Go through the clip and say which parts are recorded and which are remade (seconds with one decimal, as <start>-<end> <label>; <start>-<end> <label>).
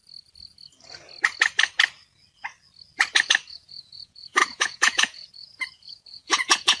0.0-3.5 recorded; 3.5-6.8 remade